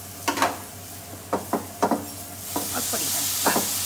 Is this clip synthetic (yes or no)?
no